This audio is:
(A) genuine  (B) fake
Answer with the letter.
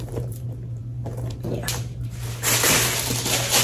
B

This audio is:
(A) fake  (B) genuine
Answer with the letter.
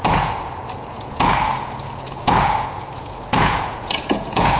A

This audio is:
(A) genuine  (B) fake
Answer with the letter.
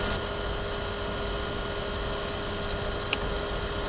A